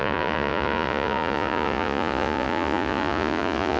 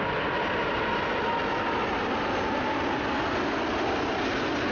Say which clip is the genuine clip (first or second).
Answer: second